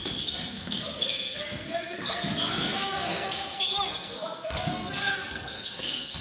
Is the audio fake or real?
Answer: fake